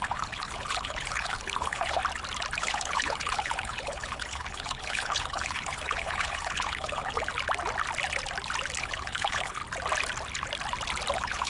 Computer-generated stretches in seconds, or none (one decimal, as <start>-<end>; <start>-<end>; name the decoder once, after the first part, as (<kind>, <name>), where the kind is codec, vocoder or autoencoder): 0.0-2.0 (codec, HILCodec); 2.6-7.3; 8.8-9.6; 11.1-11.5